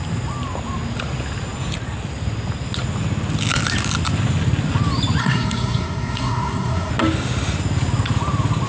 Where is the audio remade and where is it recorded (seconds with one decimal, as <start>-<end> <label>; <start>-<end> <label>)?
0.0-5.2 recorded; 5.2-6.9 remade; 6.9-8.7 recorded